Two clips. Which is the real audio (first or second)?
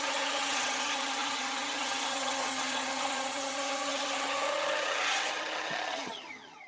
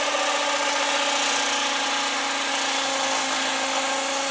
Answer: second